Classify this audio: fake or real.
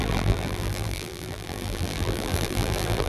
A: fake